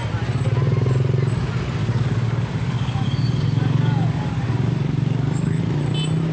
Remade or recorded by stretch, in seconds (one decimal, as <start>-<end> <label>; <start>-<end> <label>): 0.0-1.8 recorded; 1.8-5.6 remade; 5.6-6.3 recorded